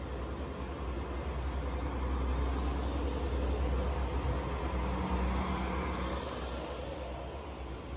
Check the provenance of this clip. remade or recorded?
recorded